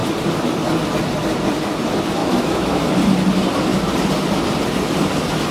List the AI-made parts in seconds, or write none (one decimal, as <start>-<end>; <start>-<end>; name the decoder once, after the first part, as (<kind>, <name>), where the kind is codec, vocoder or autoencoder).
2.2-2.9 (autoencoder, DAC-VAE)